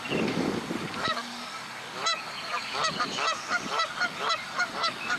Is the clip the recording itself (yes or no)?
no